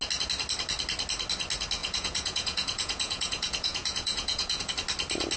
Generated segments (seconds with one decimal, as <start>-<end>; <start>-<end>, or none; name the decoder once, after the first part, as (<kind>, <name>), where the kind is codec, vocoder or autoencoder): 1.8-4.7 (vocoder, Vocos)